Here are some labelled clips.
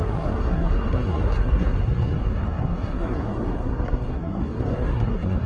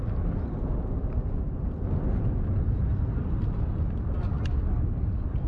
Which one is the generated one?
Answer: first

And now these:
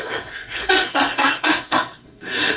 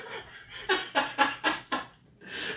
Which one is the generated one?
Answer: first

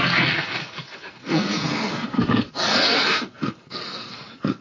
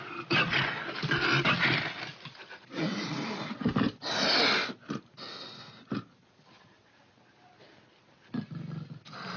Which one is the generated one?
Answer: first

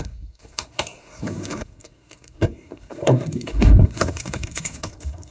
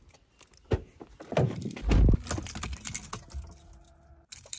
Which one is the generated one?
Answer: first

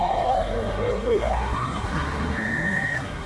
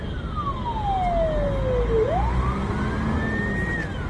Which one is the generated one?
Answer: first